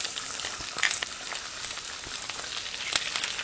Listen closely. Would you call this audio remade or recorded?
recorded